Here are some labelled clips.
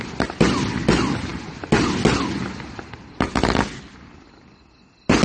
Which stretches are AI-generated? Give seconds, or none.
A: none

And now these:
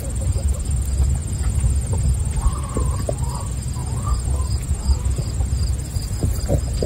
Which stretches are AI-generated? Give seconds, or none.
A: 1.2-1.7; 3.8-5.0

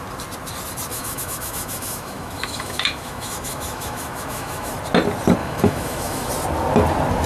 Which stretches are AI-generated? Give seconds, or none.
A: 0.9-4.7; 5.4-6.3